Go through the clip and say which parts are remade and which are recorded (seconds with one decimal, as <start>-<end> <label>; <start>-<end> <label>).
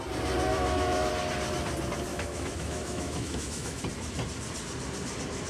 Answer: 0.0-0.5 recorded; 0.5-1.1 remade; 1.1-2.1 recorded; 2.1-3.8 remade; 3.8-5.5 recorded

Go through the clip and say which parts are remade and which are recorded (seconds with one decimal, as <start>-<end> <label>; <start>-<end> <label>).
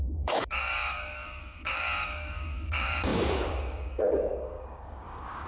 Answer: 0.0-5.5 remade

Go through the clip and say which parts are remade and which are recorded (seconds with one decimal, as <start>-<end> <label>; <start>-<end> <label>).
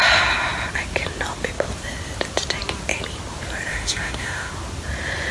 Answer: 0.0-3.7 recorded; 3.7-4.5 remade; 4.5-5.3 recorded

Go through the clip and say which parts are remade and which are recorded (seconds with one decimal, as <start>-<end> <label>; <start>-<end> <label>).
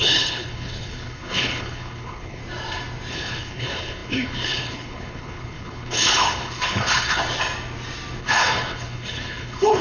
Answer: 0.0-2.4 remade; 2.4-3.1 recorded; 3.1-7.2 remade; 7.2-8.2 recorded; 8.2-9.8 remade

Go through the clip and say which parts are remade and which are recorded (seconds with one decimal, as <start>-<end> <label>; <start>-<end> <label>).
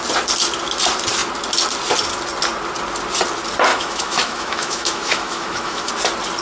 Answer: 0.0-3.7 recorded; 3.7-5.9 remade; 5.9-6.4 recorded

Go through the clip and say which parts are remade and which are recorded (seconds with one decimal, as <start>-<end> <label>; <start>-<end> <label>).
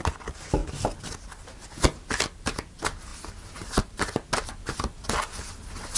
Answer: 0.0-6.0 recorded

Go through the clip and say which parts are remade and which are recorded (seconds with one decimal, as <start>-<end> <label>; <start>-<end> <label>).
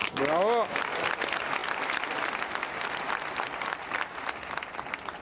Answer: 0.0-5.2 recorded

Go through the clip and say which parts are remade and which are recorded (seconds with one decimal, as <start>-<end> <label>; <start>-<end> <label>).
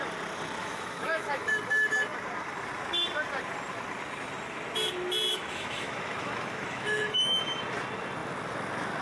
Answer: 0.0-0.6 recorded; 0.6-1.5 remade; 1.5-5.3 recorded; 5.3-7.4 remade; 7.4-9.0 recorded